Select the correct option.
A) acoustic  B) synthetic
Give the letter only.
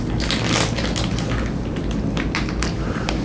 A